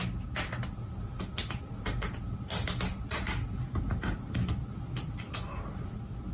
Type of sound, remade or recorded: recorded